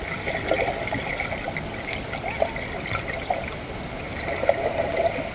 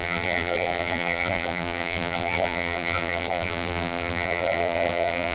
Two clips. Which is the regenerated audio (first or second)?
second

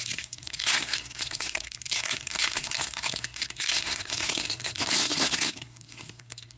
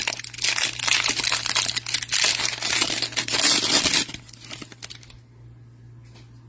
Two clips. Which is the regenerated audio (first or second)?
first